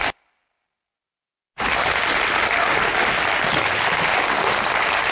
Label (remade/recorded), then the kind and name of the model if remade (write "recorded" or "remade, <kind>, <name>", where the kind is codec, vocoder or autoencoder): recorded